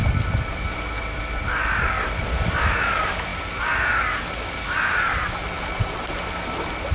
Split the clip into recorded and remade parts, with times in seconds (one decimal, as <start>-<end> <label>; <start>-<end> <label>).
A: 0.0-6.9 recorded